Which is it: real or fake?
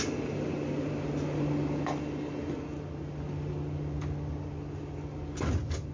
real